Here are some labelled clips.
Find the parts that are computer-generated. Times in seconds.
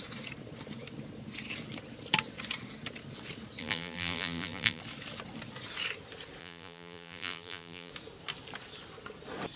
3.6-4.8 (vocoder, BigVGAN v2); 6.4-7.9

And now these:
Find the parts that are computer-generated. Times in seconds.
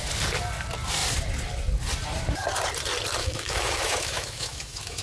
3.2-5.0 (autoencoder, DAC-VAE)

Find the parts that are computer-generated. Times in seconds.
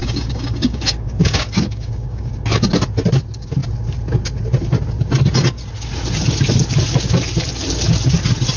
0.0-2.3 (codec, DAC)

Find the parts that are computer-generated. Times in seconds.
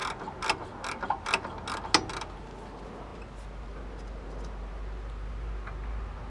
none